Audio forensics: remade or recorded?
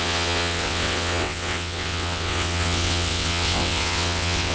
remade